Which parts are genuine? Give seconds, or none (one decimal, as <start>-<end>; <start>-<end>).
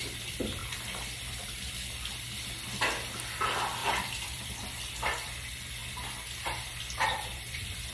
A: 5.8-6.6